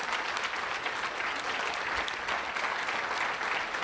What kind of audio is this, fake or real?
real